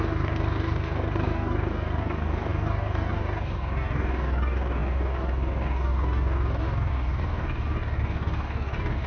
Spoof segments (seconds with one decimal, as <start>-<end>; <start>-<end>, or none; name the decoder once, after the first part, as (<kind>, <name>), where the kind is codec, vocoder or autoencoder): 0.0-9.1 (codec, DAC)